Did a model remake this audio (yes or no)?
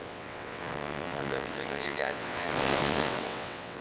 yes